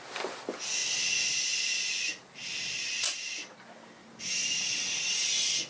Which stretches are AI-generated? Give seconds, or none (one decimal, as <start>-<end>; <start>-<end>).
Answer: none